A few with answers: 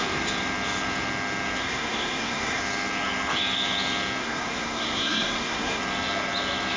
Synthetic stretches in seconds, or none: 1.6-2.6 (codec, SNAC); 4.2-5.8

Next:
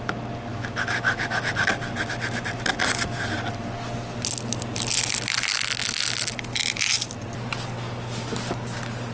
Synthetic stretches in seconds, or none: 0.5-1.5 (autoencoder, DAC-VAE)

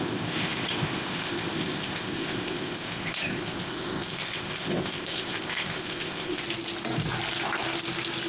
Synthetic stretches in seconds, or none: 0.0-6.4 (codec, ZipCodec)

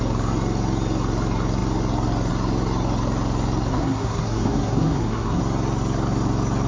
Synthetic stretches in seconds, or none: 3.7-5.4 (codec, SNAC)

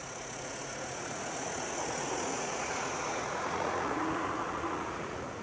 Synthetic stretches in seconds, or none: 0.0-5.4 (vocoder, Vocos)

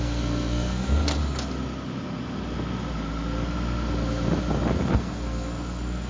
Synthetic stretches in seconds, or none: 0.0-1.2 (codec, SNAC); 4.9-6.1

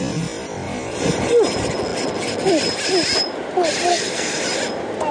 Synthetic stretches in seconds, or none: 3.9-4.4 (codec, SNAC)

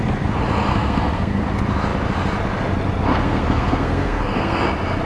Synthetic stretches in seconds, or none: 0.7-1.4 (codec, SNAC); 3.1-4.6